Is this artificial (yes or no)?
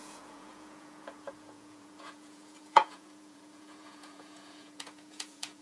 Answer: yes